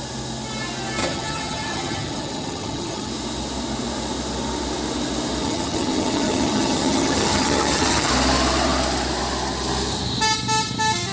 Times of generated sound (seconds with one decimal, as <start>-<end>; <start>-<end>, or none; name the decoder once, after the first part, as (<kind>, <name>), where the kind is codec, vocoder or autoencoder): 1.0-3.1 (vocoder, HiFi-GAN); 5.4-8.1